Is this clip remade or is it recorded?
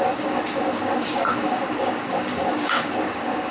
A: remade